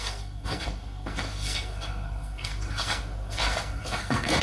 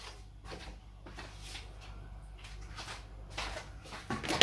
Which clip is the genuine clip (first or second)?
second